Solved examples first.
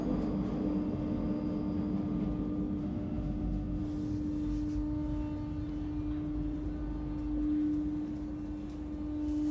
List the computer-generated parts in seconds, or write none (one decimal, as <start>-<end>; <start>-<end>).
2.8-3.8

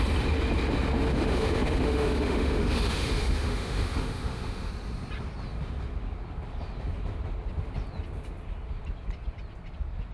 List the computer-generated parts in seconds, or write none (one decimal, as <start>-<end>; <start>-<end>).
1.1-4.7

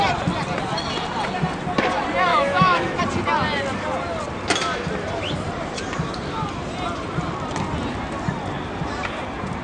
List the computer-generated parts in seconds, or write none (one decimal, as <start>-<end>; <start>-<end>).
2.3-3.0